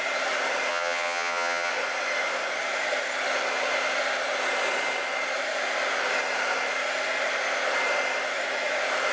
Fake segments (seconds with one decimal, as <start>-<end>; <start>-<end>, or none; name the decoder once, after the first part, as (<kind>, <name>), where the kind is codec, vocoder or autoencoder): 0.7-1.7 (vocoder, HiFi-GAN)